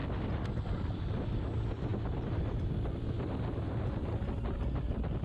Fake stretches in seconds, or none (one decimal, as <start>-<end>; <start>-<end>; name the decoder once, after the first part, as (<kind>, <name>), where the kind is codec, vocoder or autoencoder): none